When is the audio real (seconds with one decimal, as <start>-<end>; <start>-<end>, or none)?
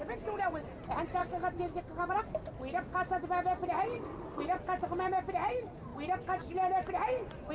0.0-7.5